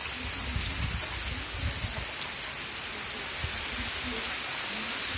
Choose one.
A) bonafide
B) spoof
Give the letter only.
A